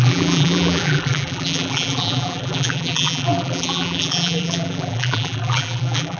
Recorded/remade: remade